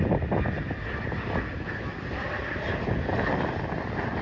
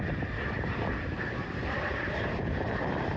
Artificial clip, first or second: second